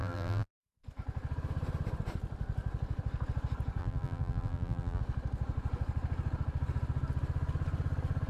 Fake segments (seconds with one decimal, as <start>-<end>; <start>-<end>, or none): 0.0-0.5; 3.8-5.0